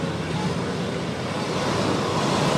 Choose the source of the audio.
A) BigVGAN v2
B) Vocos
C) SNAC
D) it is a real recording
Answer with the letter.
D